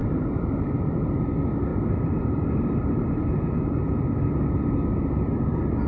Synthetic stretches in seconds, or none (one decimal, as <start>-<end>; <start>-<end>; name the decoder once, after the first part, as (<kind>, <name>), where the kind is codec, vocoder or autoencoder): 0.0-1.2 (vocoder, BigVGAN v2); 1.7-3.5; 4.9-5.9